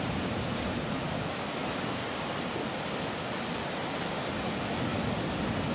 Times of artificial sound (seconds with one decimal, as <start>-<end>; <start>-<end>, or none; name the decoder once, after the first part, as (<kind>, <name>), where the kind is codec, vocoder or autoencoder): 2.0-3.1 (vocoder, BigVGAN v2)